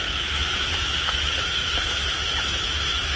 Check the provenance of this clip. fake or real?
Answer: fake